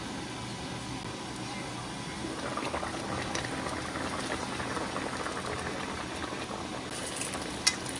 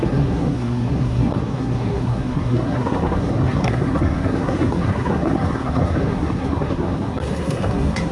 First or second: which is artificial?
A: second